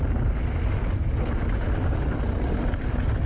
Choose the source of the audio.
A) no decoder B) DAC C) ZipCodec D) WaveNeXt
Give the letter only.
A